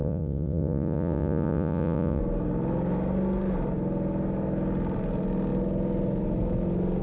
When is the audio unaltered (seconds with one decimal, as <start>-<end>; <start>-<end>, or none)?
2.2-7.0